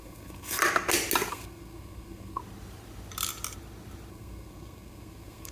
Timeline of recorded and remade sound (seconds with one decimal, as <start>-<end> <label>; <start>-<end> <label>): 0.0-0.6 remade; 0.6-1.3 recorded; 1.3-2.4 remade; 2.4-4.1 recorded; 4.1-5.5 remade